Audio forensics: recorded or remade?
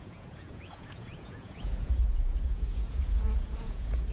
remade